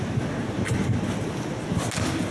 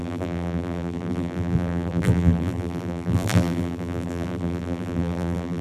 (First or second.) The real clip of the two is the first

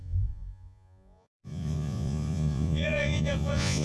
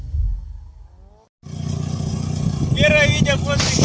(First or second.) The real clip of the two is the second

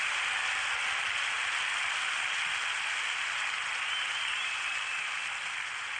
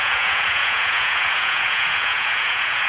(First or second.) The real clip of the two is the first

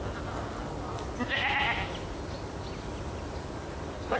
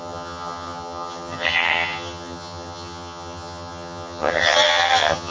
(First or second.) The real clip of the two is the first